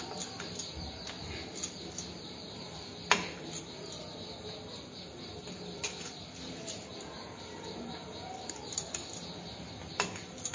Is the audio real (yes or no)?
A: yes